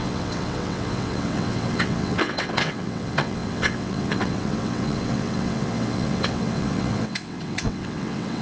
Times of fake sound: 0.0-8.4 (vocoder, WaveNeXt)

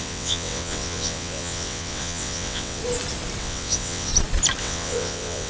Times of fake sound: 0.0-2.8 (vocoder, WaveNeXt); 3.4-4.1; 4.6-5.5

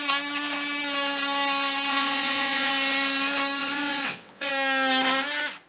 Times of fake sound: 1.9-2.7 (vocoder, WaveNeXt); 3.6-4.5

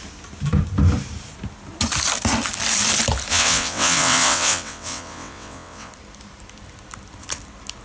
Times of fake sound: 3.3-5.9 (vocoder, WaveNeXt)

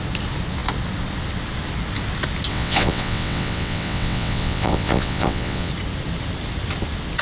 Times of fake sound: 2.5-5.7 (vocoder, WaveNeXt)